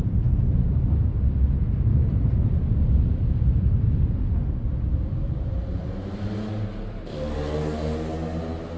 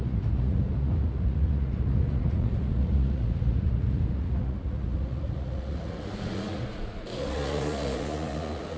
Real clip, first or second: first